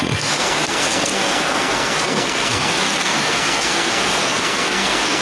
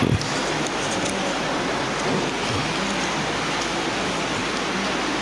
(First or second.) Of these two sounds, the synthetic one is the first